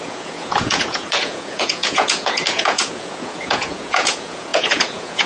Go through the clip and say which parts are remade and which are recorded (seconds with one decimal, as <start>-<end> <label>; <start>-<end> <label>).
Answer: 0.0-5.3 remade